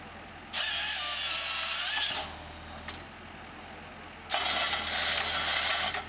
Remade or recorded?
recorded